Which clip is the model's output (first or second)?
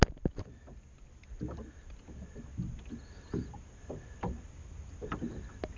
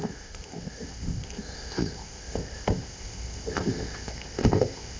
second